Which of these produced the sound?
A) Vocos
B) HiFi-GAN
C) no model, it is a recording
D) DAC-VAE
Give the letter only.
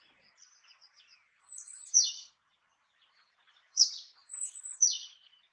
A